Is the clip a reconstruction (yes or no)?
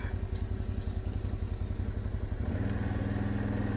no